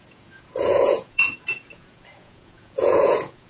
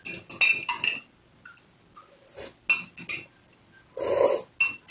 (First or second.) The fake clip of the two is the first